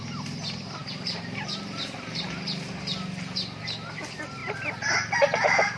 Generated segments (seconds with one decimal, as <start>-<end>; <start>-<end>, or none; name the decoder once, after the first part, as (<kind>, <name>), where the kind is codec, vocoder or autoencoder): none